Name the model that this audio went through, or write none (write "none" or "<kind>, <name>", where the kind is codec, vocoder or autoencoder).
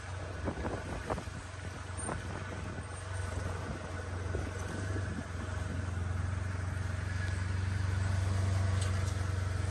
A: none